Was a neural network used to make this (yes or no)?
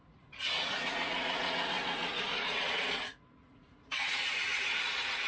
yes